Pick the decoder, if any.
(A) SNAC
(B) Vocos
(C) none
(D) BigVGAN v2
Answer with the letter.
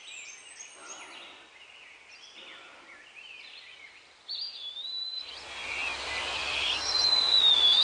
C